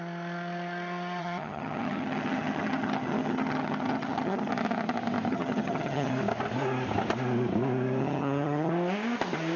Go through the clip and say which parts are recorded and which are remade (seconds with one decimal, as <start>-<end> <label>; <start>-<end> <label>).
0.0-1.2 recorded; 1.2-4.5 remade; 4.5-5.3 recorded; 5.3-6.1 remade; 6.1-8.0 recorded; 8.0-8.7 remade; 8.7-9.6 recorded